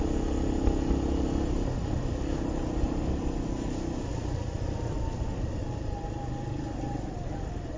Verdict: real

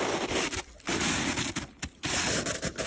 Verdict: real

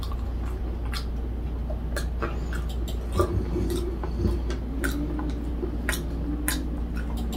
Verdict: real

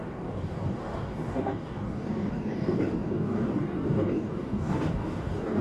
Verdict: fake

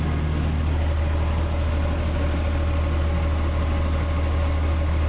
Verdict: real